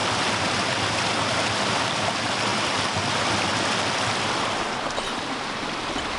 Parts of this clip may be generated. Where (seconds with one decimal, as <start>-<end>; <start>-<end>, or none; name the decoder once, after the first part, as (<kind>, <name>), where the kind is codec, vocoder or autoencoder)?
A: 1.7-2.5 (vocoder, BigVGAN v2); 5.0-6.2